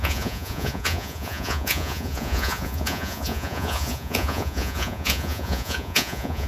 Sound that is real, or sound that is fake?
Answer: fake